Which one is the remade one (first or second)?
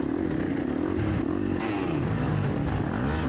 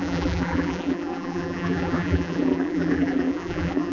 second